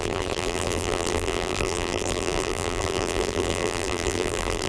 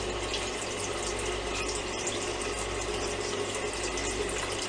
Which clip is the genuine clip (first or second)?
second